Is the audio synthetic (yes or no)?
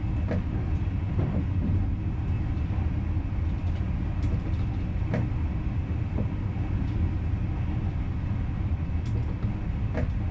no